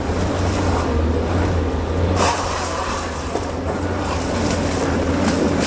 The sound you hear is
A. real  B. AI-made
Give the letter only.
A